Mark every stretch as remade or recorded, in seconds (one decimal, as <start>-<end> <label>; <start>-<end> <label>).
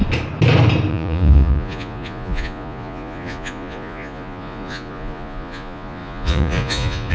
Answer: 0.0-0.9 recorded; 0.9-7.1 remade